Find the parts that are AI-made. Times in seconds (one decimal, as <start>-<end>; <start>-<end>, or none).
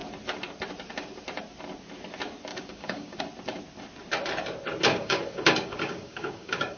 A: 2.5-3.2; 4.9-6.8